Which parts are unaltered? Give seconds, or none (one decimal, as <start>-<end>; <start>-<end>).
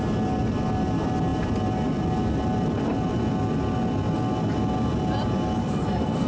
0.0-5.6